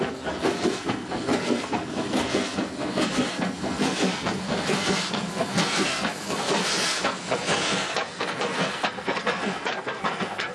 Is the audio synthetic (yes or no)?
yes